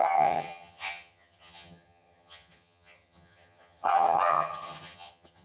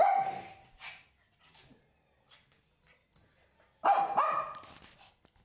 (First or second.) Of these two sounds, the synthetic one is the first